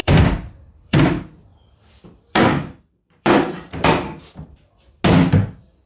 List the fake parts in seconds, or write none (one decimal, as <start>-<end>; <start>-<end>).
0.0-1.0; 1.5-5.0